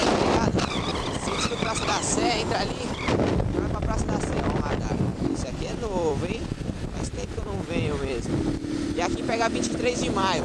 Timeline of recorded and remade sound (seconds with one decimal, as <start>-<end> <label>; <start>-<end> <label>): 0.0-10.4 remade